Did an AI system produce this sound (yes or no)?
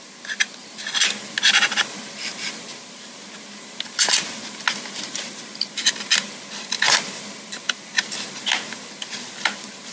no